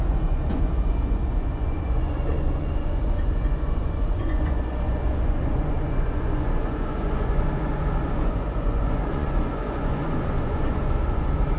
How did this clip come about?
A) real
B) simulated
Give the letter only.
B